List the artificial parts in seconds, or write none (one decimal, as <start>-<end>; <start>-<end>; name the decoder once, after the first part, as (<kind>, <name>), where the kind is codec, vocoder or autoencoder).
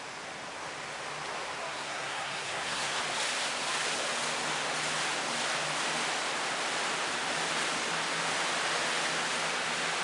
1.7-3.0 (codec, SNAC)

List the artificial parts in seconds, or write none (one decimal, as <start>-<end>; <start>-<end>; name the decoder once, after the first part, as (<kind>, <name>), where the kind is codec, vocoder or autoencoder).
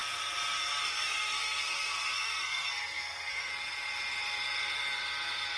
0.9-3.5 (codec, SNAC)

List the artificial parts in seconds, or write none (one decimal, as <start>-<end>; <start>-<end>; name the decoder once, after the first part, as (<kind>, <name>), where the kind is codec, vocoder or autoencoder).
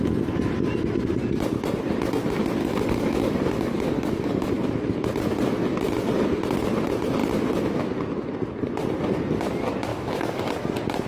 2.6-4.5 (codec, DAC); 9.9-10.5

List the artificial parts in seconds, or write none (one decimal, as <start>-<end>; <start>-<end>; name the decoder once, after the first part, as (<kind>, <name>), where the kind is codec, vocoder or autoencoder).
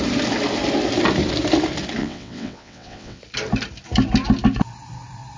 2.0-3.2 (vocoder, WaveNeXt)